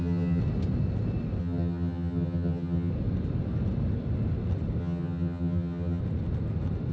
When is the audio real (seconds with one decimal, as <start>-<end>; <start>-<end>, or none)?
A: 0.4-1.4; 2.9-4.8; 6.0-6.9